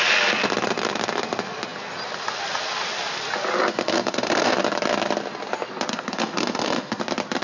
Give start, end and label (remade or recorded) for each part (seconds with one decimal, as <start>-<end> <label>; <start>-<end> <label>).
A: 0.0-3.7 recorded; 3.7-4.6 remade; 4.6-5.9 recorded; 5.9-7.0 remade; 7.0-7.4 recorded